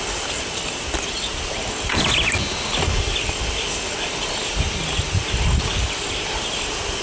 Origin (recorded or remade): recorded